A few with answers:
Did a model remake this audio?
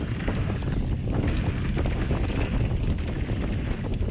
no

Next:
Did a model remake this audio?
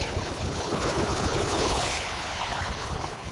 yes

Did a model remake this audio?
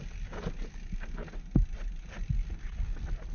no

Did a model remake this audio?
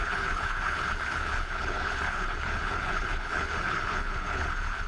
yes